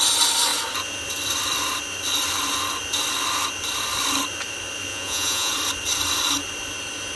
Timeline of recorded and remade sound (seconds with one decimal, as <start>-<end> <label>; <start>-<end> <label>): 0.0-4.9 recorded; 4.9-5.5 remade; 5.5-7.2 recorded